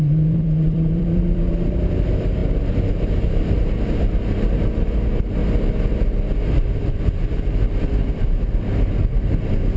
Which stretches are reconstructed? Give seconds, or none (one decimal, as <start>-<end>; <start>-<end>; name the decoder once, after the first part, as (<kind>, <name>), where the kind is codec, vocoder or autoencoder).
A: 0.0-5.4 (vocoder, BigVGAN v2); 6.4-9.8